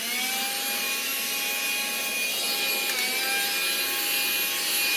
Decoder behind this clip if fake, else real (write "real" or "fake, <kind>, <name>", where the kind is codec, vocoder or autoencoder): real